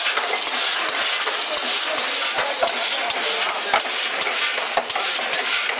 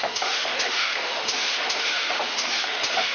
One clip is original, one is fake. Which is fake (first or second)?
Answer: second